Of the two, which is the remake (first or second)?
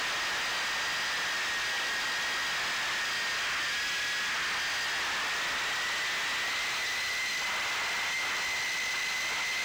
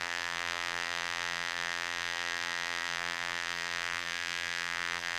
second